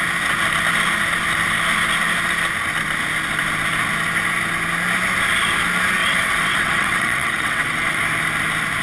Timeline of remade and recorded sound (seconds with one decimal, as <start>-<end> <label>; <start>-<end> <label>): 0.0-6.0 recorded; 6.0-8.0 remade; 8.0-8.8 recorded